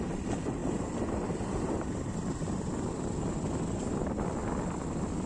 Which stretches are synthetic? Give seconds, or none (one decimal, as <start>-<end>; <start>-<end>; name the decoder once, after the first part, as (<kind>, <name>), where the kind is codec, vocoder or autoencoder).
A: 0.6-3.8 (vocoder, BigVGAN v2)